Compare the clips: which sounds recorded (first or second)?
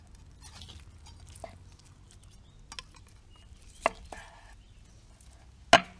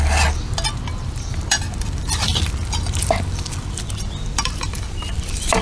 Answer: first